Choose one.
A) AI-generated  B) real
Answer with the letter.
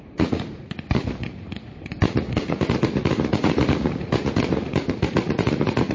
A